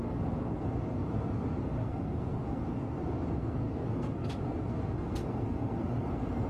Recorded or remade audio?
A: remade